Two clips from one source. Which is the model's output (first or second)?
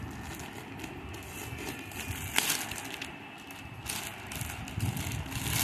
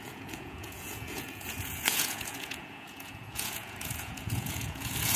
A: second